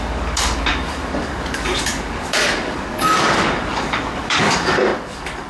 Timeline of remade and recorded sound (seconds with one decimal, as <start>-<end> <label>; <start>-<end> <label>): 0.0-5.5 remade